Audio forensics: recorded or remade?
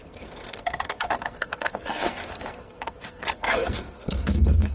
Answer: remade